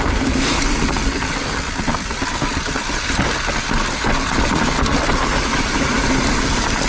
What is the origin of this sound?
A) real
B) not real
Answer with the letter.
A